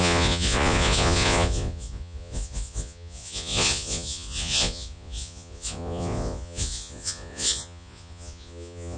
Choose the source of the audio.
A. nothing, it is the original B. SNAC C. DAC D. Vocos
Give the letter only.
D